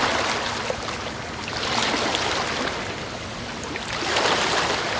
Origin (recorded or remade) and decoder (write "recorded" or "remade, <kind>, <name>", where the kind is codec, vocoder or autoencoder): recorded